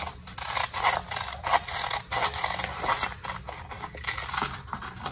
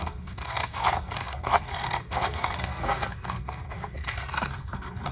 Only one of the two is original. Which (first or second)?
first